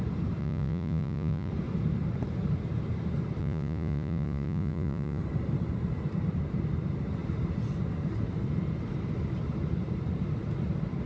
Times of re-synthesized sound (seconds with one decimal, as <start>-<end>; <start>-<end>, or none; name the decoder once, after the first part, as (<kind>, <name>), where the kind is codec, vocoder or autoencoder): 0.4-1.5 (vocoder, Vocos); 3.4-5.2